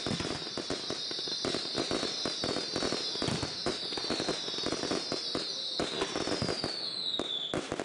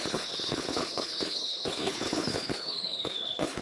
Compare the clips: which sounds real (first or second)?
first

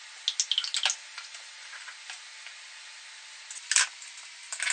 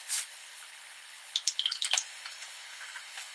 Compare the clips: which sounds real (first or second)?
first